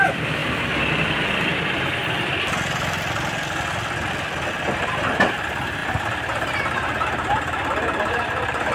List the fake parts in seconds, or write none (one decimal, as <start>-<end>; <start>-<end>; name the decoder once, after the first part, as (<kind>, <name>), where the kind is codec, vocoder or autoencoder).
0.0-0.4 (vocoder, BigVGAN v2); 4.9-8.7